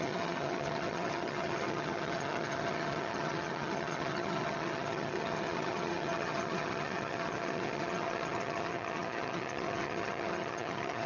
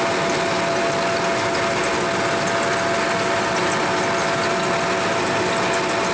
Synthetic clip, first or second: first